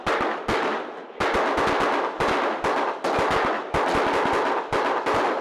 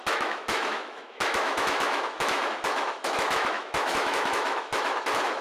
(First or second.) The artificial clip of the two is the second